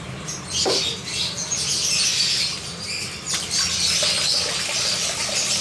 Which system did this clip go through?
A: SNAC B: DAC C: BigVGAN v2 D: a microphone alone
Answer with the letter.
D